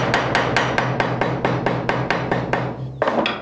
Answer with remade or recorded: recorded